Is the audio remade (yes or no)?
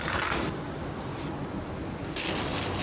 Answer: no